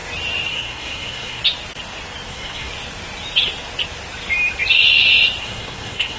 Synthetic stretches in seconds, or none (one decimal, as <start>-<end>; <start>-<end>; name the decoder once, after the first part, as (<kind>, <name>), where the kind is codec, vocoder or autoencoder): 0.5-1.4 (codec, SNAC); 2.3-2.7; 5.4-6.2